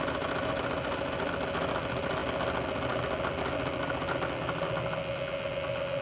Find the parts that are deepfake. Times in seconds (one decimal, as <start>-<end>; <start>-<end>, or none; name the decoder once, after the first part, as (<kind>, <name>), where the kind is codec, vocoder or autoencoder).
none